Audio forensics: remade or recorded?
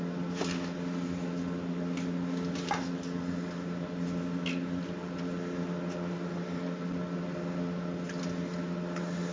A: recorded